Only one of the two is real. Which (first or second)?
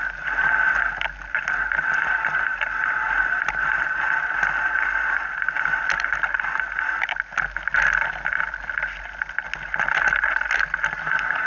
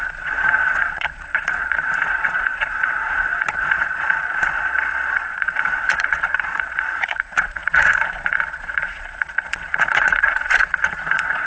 first